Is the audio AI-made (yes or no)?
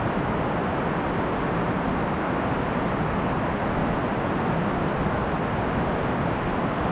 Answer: no